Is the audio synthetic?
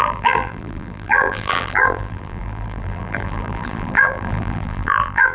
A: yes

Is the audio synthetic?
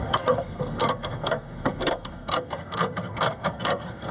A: yes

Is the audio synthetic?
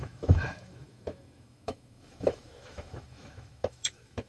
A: yes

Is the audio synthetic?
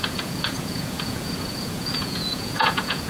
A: yes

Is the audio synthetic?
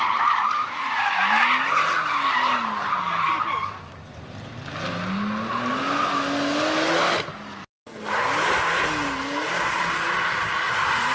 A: no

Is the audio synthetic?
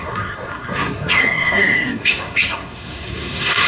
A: yes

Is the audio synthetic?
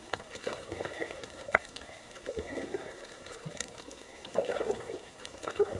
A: yes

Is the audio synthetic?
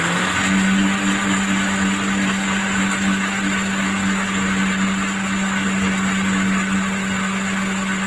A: no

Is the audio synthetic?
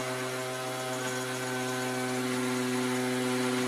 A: no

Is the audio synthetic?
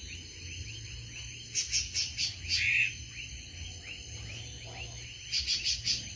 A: no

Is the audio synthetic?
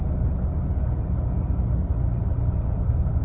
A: no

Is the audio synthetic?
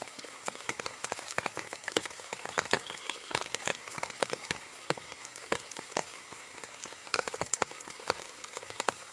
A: yes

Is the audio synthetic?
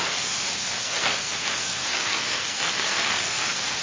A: yes